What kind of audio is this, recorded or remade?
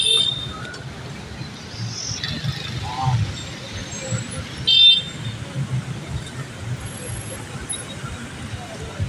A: recorded